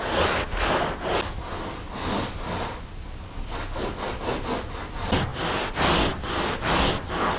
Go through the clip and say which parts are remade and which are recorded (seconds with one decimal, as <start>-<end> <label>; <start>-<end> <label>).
0.0-7.4 recorded